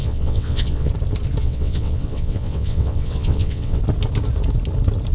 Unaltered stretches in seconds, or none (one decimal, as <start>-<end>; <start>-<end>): 0.9-1.4; 3.8-5.1